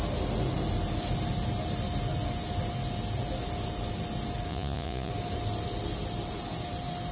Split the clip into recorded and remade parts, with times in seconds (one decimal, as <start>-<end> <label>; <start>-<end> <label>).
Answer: 0.0-4.5 recorded; 4.5-5.1 remade; 5.1-7.1 recorded